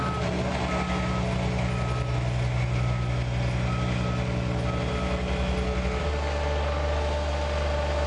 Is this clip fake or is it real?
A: real